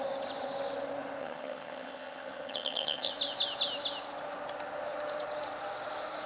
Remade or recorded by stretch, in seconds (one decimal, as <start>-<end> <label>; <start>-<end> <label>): 0.0-1.2 recorded; 1.2-3.1 remade; 3.1-6.3 recorded